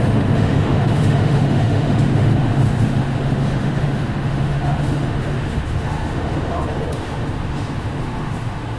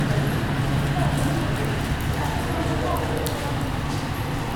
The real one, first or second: second